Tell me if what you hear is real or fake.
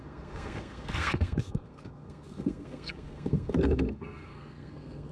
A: fake